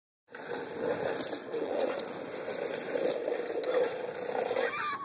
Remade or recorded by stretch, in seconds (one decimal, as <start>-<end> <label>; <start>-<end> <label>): 0.0-1.4 recorded; 1.4-2.0 remade; 2.0-5.0 recorded